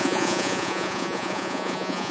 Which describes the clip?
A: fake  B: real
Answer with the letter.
A